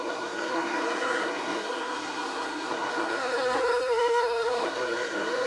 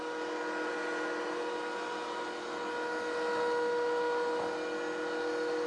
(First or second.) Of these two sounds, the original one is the second